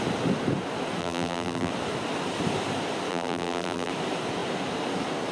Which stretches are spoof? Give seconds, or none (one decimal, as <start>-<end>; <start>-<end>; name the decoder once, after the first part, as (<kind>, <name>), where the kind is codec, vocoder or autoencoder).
1.0-1.7 (vocoder, BigVGAN v2); 3.1-3.9